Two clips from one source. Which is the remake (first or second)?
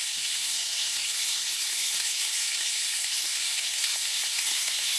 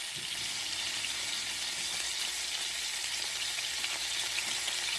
first